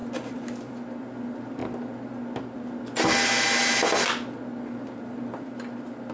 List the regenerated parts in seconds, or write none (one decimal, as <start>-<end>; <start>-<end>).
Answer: none